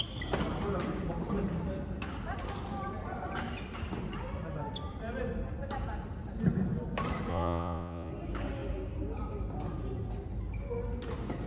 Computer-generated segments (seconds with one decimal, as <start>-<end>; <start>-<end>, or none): 7.3-8.1